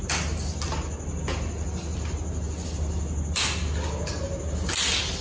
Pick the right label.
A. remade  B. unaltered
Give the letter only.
B